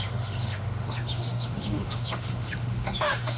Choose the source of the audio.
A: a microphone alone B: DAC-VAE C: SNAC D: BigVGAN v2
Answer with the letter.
B